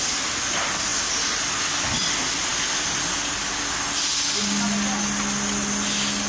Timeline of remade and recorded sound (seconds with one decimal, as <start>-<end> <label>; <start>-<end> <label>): 0.0-6.3 recorded

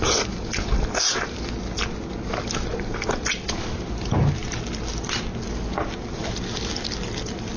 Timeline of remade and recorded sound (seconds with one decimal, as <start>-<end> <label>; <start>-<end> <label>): 0.0-7.6 recorded

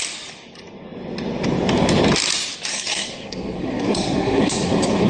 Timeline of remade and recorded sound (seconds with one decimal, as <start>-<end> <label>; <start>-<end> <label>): 0.0-2.7 recorded; 2.7-5.1 remade

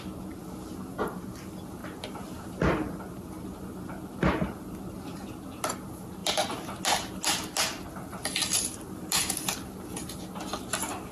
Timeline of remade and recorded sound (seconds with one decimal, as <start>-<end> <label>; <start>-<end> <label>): 0.0-11.1 recorded